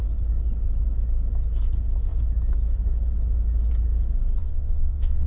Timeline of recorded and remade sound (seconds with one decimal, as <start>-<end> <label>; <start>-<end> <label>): 0.0-4.4 recorded; 4.4-5.3 remade